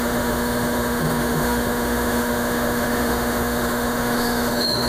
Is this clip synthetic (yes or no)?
yes